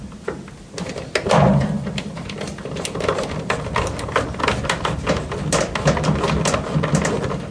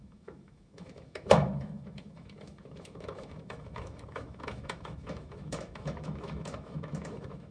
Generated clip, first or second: second